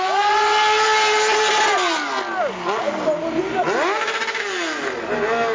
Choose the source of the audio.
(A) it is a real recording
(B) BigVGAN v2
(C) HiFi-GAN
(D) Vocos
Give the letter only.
A